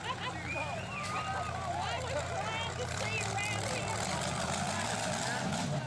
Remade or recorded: recorded